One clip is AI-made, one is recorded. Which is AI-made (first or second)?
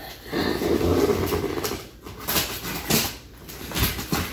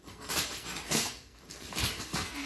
second